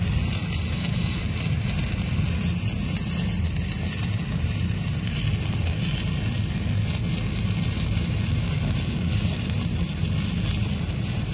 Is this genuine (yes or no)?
yes